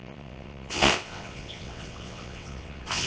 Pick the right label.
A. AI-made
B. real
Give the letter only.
A